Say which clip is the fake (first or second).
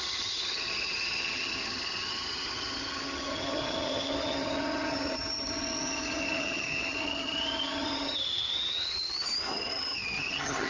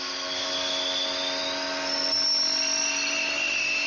first